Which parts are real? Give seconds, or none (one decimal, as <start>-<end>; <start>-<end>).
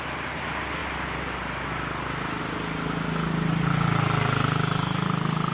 0.0-5.5